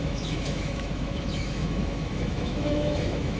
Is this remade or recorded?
remade